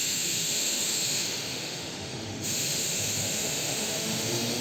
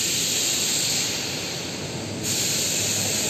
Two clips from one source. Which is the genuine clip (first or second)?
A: second